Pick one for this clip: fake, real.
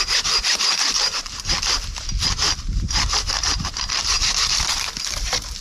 fake